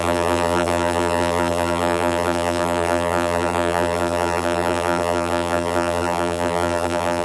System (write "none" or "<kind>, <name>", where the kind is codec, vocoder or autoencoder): vocoder, BigVGAN v2